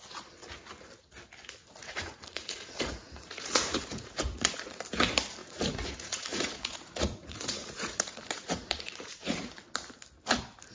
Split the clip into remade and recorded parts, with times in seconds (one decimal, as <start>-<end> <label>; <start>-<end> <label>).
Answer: 0.0-1.8 recorded; 1.8-4.8 remade; 4.8-5.4 recorded; 5.4-9.5 remade; 9.5-10.7 recorded